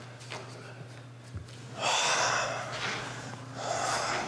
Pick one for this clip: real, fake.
real